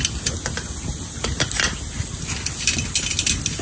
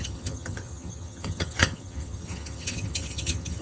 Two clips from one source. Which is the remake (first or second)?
second